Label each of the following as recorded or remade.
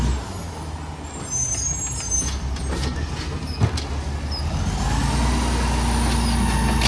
recorded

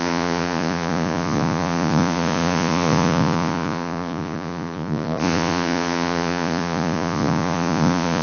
remade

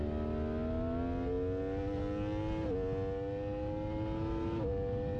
recorded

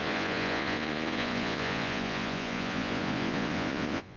remade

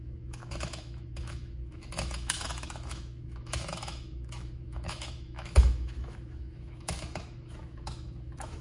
remade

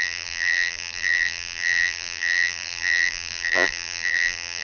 remade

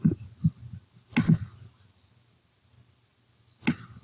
recorded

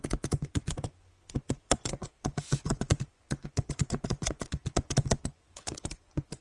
remade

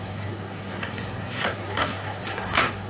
remade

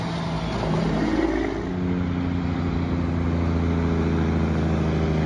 recorded